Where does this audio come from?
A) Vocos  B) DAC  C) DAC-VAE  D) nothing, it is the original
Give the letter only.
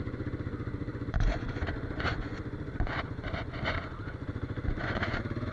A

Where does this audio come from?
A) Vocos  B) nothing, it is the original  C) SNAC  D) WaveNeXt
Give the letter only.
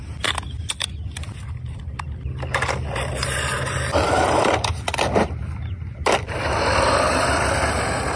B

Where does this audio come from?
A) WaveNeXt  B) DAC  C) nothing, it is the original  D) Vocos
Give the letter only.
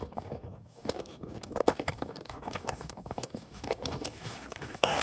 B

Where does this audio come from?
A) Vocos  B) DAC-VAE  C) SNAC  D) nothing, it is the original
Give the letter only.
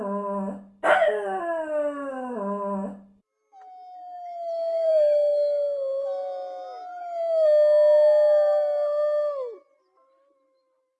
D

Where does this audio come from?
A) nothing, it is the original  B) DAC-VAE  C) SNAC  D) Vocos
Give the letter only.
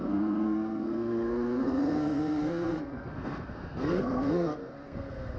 C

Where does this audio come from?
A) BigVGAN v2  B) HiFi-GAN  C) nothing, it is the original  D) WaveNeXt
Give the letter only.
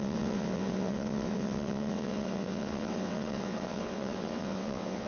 D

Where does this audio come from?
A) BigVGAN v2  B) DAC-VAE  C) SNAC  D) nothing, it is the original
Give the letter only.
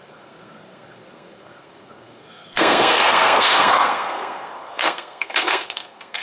C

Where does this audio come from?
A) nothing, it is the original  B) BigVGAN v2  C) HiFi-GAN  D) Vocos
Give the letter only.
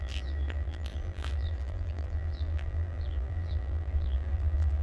B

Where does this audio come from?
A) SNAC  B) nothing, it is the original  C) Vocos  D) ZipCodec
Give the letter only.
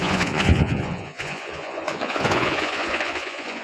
C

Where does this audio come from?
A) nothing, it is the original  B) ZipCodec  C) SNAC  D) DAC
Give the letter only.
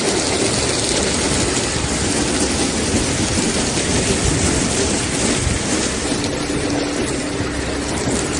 A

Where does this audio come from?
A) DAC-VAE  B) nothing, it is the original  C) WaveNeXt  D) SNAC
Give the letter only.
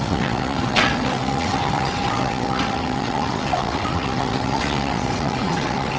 C